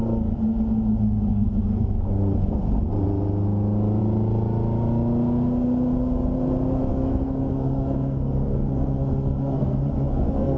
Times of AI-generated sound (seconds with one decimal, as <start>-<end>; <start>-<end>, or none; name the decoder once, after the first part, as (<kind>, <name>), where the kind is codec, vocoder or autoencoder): 1.3-1.9 (codec, SNAC); 6.9-10.6